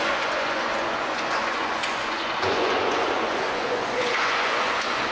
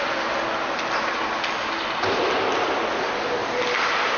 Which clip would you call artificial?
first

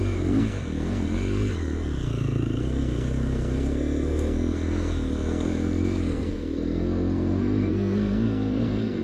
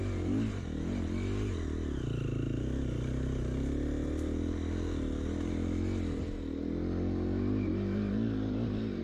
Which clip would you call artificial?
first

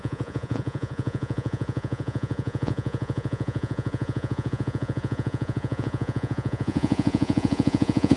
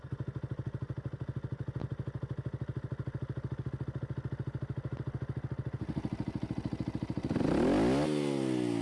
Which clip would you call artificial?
first